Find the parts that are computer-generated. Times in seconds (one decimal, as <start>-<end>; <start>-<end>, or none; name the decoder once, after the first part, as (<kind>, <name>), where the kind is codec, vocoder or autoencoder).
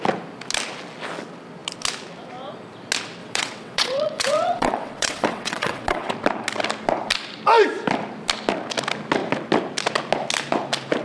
3.2-6.1 (vocoder, WaveNeXt)